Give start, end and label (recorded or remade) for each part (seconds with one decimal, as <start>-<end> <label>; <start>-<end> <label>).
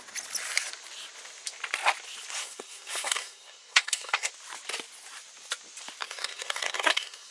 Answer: 0.0-2.4 recorded; 2.4-4.3 remade; 4.3-6.0 recorded; 6.0-7.3 remade